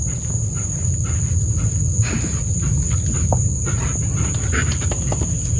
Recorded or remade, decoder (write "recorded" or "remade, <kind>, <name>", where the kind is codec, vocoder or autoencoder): recorded